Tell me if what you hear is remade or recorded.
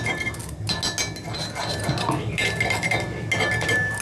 recorded